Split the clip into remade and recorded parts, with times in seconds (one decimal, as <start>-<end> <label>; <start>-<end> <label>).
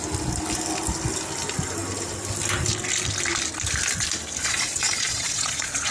0.0-4.4 recorded; 4.4-5.9 remade